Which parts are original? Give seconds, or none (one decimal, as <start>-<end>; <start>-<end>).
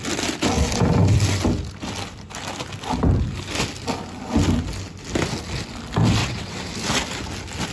0.0-6.2; 6.7-7.7